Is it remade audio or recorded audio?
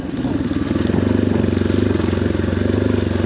recorded